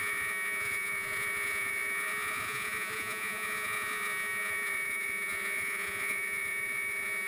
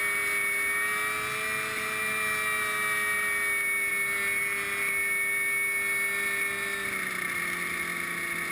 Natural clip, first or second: second